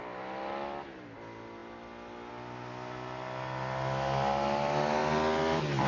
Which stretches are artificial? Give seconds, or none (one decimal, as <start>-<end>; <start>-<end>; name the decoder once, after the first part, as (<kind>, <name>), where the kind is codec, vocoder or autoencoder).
none